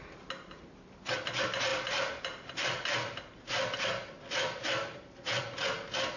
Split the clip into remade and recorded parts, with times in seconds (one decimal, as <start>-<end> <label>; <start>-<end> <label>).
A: 0.0-6.2 recorded